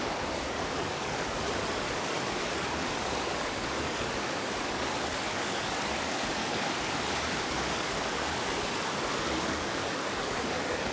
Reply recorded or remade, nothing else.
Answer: remade